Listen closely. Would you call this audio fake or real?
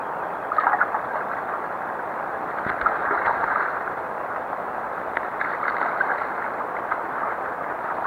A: real